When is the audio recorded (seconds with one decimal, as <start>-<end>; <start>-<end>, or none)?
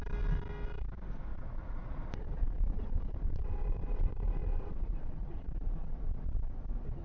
0.0-1.3; 5.4-7.0